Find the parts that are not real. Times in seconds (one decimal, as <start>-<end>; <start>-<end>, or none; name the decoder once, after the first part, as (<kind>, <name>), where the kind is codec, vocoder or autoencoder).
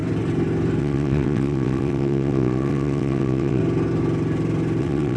0.8-3.6 (vocoder, WaveNeXt); 4.8-5.2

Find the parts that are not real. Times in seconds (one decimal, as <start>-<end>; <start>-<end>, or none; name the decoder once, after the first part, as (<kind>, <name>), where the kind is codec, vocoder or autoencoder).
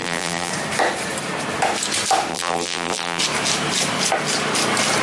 0.0-0.5 (vocoder, BigVGAN v2); 2.3-3.2